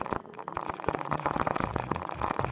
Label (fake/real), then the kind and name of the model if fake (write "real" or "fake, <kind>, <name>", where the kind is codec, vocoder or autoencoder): fake, vocoder, Vocos